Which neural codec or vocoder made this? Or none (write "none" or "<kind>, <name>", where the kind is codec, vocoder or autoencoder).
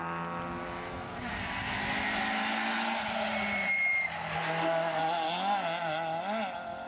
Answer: none